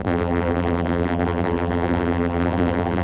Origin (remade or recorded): remade